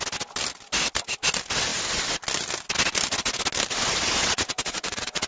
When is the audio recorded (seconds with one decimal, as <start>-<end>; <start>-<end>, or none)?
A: 0.0-4.2